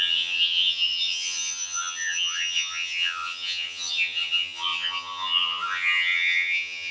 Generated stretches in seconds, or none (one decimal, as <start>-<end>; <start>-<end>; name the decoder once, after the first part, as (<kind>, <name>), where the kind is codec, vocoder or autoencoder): 0.0-6.9 (vocoder, HiFi-GAN)

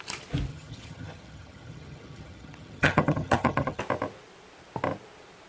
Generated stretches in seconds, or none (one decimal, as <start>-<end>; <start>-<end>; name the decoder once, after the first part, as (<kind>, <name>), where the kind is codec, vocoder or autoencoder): 0.5-3.8 (vocoder, HiFi-GAN)

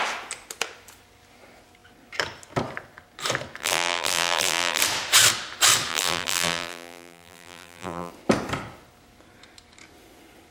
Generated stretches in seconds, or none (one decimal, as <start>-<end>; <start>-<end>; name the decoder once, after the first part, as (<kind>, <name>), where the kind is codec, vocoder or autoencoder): 3.6-4.8 (vocoder, BigVGAN v2); 5.9-8.1

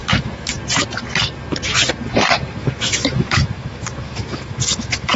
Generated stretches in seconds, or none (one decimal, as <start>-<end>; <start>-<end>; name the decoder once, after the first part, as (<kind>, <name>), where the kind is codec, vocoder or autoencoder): 0.0-0.6 (autoencoder, DAC-VAE); 2.6-5.2

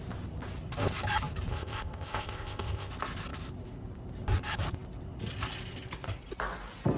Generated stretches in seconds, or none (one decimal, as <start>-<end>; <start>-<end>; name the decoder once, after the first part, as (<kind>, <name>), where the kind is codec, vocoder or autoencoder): 1.5-2.9 (codec, ZipCodec)